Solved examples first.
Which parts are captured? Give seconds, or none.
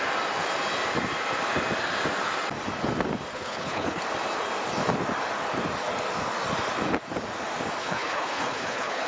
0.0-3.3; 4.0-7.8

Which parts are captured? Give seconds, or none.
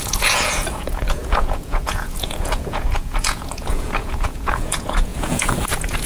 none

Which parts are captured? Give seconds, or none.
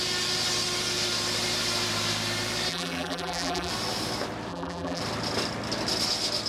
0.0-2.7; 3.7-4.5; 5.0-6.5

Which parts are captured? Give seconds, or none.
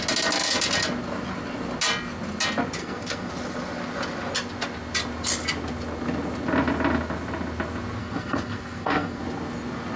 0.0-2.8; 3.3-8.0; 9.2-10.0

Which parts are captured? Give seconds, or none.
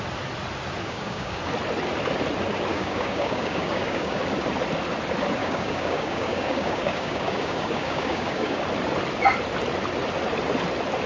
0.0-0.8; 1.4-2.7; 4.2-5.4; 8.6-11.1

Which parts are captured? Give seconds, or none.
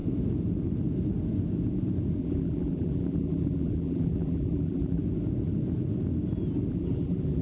0.0-2.2; 5.0-6.7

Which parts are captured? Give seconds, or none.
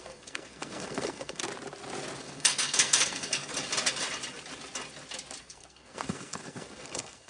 1.4-2.2; 3.5-5.4